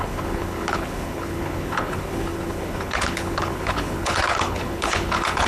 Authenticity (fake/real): fake